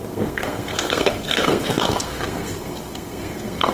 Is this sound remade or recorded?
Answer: remade